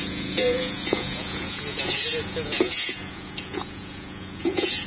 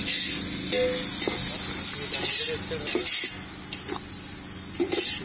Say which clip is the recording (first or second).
second